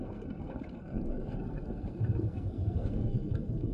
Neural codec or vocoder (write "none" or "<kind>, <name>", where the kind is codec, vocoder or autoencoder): codec, SNAC